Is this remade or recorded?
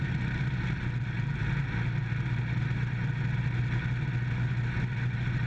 recorded